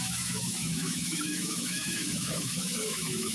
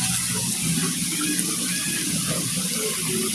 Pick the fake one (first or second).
first